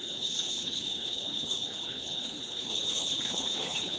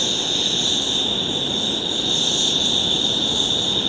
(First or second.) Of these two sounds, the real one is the second